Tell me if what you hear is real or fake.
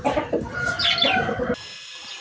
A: real